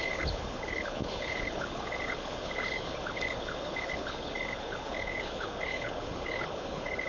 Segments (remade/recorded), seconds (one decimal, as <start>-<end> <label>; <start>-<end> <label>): 0.0-7.1 remade